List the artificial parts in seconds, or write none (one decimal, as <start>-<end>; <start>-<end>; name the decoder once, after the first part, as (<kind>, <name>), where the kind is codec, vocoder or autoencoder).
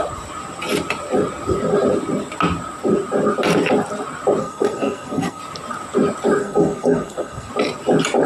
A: 4.4-5.4 (codec, SNAC); 6.4-7.5